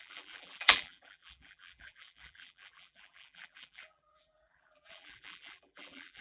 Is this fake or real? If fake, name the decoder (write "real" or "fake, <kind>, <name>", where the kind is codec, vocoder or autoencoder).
fake, vocoder, BigVGAN v2